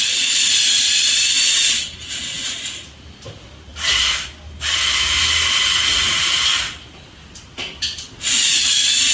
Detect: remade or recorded recorded